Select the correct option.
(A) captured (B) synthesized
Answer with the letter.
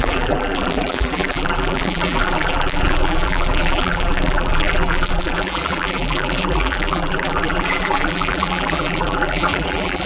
B